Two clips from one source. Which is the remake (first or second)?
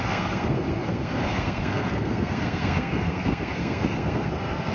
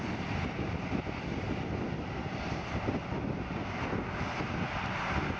first